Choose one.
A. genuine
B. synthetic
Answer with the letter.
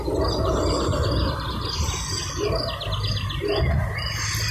A